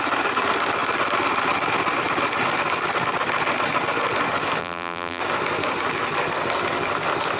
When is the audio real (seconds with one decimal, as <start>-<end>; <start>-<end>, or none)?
0.0-4.6; 5.2-7.4